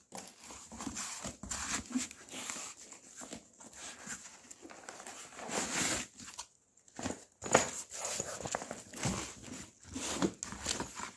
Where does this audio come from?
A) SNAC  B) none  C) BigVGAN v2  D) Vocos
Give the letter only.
B